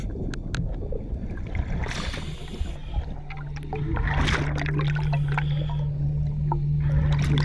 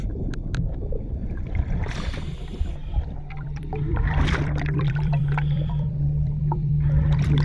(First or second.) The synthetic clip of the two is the second